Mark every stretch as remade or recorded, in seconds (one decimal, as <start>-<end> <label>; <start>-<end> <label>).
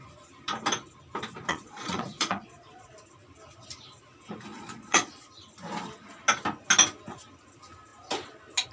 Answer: 0.0-1.5 recorded; 1.5-2.9 remade; 2.9-4.5 recorded; 4.5-5.1 remade; 5.1-8.7 recorded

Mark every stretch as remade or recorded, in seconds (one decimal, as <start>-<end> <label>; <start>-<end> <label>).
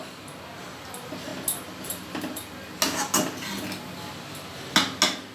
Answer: 0.0-5.3 recorded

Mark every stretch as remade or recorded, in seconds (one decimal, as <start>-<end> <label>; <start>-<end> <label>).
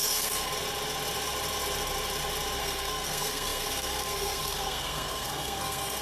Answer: 0.0-0.5 remade; 0.5-2.6 recorded; 2.6-6.0 remade